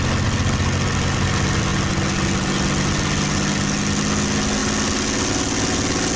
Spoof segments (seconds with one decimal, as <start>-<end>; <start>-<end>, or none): none